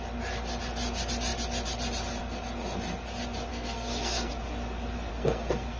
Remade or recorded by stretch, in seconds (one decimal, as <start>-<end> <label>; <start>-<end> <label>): 0.0-3.5 recorded; 3.5-4.3 remade; 4.3-5.1 recorded; 5.1-5.8 remade

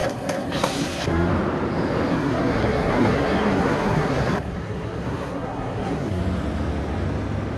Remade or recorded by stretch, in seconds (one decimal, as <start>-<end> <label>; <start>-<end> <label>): 0.0-1.3 remade; 1.3-2.1 recorded; 2.1-6.2 remade; 6.2-7.6 recorded